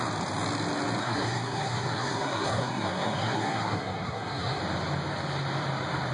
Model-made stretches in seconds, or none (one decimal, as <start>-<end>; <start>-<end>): 1.0-4.6